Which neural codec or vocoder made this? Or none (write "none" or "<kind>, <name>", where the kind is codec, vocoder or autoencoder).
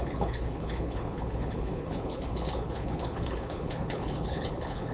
codec, HILCodec